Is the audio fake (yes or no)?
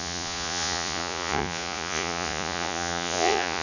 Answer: yes